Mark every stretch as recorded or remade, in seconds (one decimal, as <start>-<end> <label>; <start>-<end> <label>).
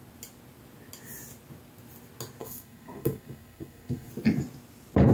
0.0-2.4 recorded; 2.4-4.1 remade; 4.1-5.1 recorded